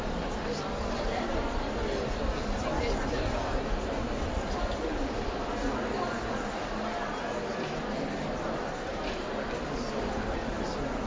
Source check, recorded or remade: recorded